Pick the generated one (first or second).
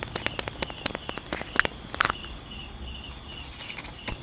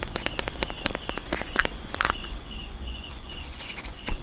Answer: second